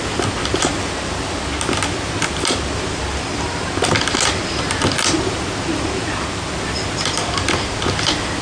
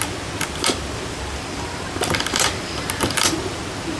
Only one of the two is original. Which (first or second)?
first